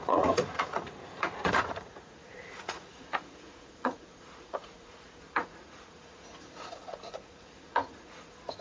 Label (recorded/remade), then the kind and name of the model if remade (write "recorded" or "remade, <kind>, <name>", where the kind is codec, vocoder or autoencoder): remade, vocoder, Vocos